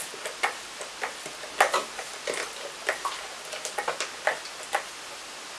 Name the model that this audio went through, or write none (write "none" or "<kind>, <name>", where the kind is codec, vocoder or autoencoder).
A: none